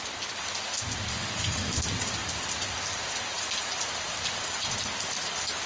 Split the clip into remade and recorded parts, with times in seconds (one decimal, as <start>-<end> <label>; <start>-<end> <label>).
0.0-1.1 recorded; 1.1-1.7 remade; 1.7-5.7 recorded